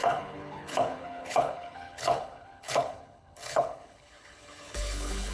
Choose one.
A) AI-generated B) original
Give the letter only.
A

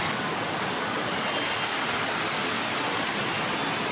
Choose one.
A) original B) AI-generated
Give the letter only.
A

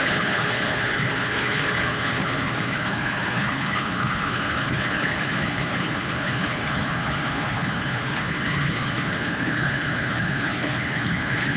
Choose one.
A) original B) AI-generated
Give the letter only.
B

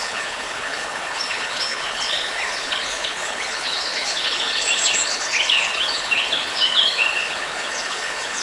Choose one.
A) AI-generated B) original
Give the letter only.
A